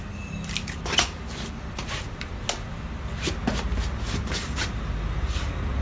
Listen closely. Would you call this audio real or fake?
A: real